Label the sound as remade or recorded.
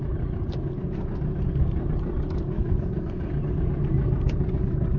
recorded